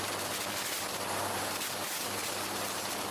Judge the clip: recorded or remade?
recorded